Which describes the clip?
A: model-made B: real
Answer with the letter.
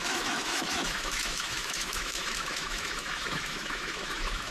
A